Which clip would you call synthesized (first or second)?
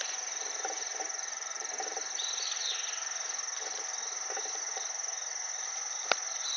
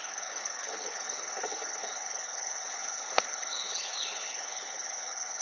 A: second